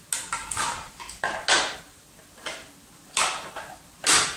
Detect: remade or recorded recorded